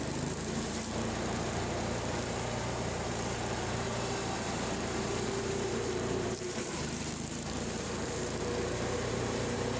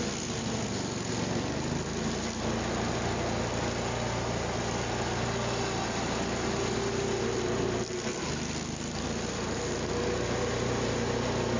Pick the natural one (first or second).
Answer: second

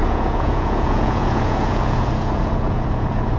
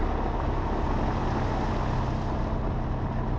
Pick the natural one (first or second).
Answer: second